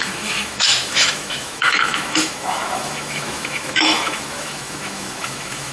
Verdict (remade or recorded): remade